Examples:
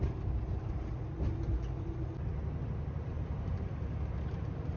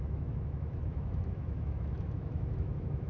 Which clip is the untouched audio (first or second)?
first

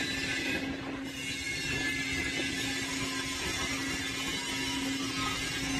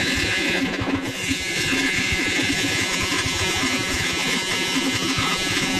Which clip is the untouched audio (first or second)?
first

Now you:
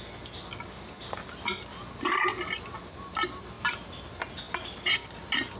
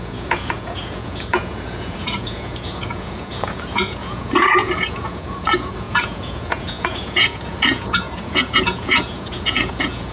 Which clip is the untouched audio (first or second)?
first